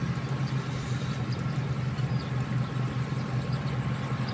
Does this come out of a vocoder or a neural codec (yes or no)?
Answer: no